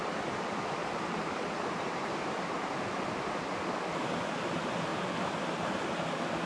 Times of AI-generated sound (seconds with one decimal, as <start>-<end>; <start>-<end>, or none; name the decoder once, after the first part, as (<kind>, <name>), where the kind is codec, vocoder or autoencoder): 0.8-2.7 (vocoder, BigVGAN v2); 4.9-5.7

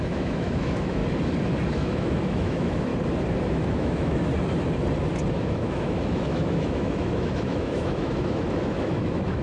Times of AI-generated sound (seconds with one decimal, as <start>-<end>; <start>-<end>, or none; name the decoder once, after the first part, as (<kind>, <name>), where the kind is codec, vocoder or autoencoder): 0.0-1.0 (autoencoder, DAC-VAE); 1.7-2.9; 3.5-4.3; 5.3-9.4

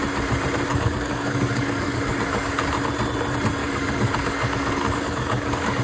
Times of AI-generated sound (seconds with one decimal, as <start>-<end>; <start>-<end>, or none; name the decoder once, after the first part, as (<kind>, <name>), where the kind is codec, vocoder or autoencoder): 0.7-2.5 (codec, DAC); 3.6-5.8